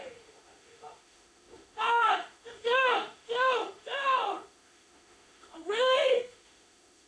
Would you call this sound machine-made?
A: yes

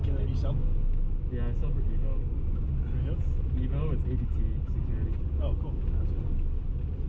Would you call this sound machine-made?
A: no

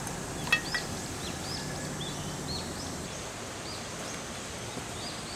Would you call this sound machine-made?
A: no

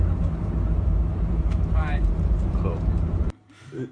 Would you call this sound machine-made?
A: yes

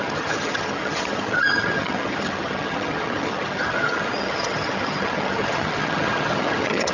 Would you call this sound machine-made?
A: yes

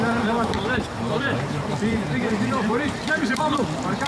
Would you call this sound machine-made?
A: yes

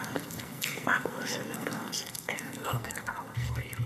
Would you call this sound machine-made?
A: yes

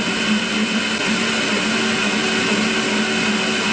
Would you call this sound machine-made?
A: no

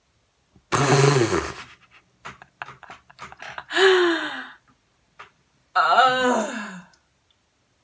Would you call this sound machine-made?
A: no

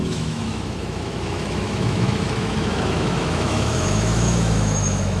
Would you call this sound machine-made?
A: yes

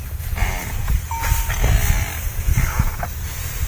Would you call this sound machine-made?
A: no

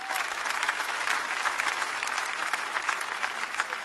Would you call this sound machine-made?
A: yes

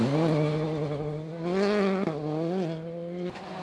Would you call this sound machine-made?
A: no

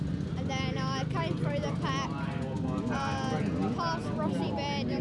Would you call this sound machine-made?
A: no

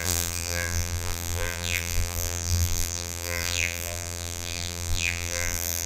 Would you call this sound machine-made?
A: yes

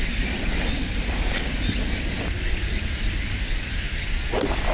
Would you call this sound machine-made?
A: no